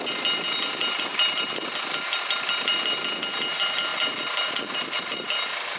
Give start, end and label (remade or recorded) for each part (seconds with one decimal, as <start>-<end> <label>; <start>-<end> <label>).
0.0-5.8 recorded